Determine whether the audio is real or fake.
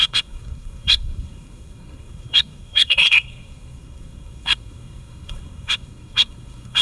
fake